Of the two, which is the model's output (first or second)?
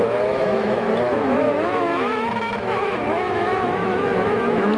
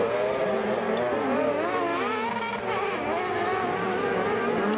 first